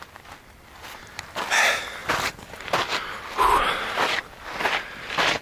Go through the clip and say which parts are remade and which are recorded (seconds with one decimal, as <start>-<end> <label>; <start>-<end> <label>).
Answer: 0.0-2.0 recorded; 2.0-5.4 remade

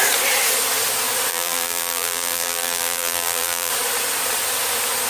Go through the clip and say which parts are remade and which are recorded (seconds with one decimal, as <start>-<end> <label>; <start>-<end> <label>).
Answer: 0.0-1.3 recorded; 1.3-3.7 remade; 3.7-5.1 recorded